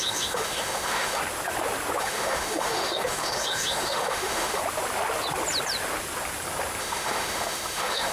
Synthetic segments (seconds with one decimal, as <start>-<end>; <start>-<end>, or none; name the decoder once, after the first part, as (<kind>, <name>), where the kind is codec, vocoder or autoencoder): 0.0-1.2 (autoencoder, DAC-VAE); 2.0-4.6; 6.8-8.1